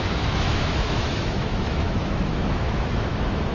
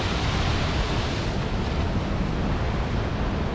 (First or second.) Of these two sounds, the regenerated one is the first